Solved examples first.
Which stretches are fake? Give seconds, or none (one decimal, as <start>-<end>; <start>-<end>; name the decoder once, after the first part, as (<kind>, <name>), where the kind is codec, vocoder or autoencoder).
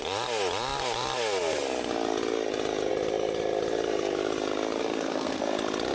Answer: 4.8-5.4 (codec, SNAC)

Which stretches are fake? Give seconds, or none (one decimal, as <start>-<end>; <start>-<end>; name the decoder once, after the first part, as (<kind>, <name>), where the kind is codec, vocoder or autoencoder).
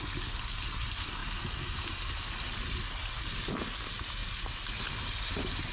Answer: none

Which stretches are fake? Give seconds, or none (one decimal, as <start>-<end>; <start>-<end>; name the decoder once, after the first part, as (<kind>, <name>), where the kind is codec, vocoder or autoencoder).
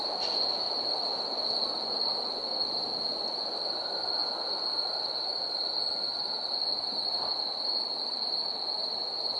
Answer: none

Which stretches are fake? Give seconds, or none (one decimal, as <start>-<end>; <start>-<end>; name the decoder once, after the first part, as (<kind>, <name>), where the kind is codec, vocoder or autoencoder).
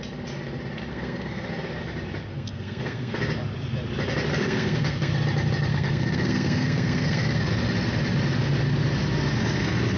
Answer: 0.9-1.5 (codec, SNAC); 2.3-3.2; 4.3-5.1; 5.7-7.4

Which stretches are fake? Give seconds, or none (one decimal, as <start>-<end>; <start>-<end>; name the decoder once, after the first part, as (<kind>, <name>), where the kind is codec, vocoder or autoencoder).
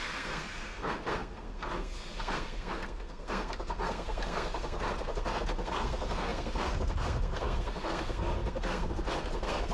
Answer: 0.0-9.7 (codec, SNAC)